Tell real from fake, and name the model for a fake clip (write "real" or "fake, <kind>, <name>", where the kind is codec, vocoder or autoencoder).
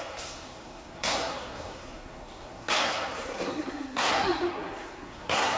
fake, codec, SNAC